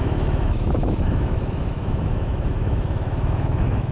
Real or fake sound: fake